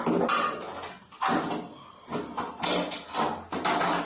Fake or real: real